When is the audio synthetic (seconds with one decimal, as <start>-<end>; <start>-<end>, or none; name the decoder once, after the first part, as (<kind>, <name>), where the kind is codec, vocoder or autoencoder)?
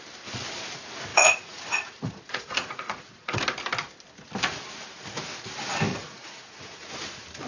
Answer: 1.1-3.4 (vocoder, Vocos); 5.9-6.9